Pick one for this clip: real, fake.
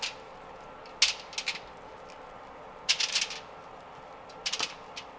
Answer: real